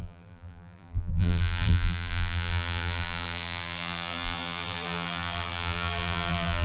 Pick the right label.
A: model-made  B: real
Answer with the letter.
A